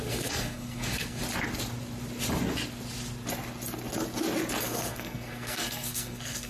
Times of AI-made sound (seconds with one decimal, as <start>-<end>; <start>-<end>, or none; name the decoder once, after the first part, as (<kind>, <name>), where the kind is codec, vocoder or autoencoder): 0.0-1.2 (codec, SNAC); 4.6-6.5